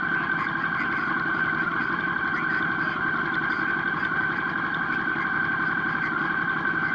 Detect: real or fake real